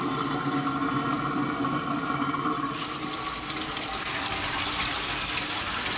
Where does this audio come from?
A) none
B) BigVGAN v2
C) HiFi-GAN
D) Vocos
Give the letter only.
A